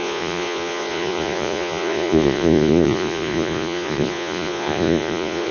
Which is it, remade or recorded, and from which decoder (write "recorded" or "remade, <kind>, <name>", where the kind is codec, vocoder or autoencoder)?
remade, vocoder, Vocos